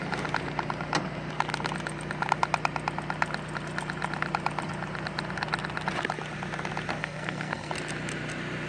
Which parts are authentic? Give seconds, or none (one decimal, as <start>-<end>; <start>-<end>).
0.0-7.0; 7.7-8.7